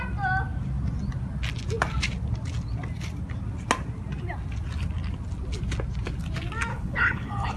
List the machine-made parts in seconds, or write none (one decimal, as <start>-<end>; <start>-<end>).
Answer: 6.7-7.6